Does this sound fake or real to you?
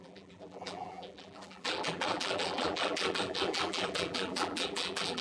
fake